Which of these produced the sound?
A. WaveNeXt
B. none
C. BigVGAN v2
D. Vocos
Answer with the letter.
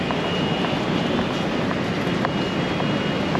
B